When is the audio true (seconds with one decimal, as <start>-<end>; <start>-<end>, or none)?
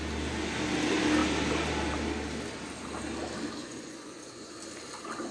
0.0-3.6; 4.5-5.3